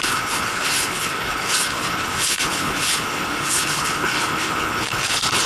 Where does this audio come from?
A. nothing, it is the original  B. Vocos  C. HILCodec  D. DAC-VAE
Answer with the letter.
C